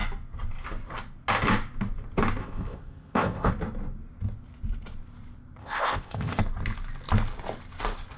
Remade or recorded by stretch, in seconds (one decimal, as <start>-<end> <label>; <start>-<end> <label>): 0.0-2.4 recorded; 2.4-3.5 remade; 3.5-5.6 recorded; 5.6-6.4 remade; 6.4-8.2 recorded